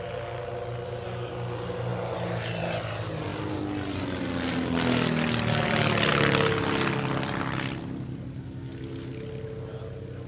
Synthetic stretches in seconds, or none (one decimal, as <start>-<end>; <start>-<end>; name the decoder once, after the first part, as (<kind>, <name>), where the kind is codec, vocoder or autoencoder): none